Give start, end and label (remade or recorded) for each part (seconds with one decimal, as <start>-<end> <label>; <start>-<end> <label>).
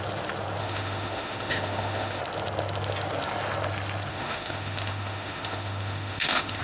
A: 0.0-0.6 recorded; 0.6-2.2 remade; 2.2-4.1 recorded; 4.1-6.6 remade